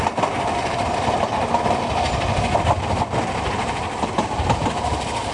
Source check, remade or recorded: recorded